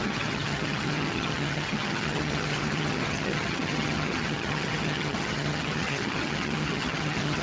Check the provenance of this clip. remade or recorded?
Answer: remade